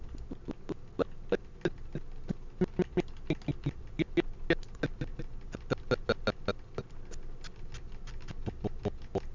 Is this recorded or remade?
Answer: recorded